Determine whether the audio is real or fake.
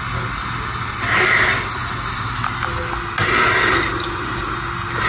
real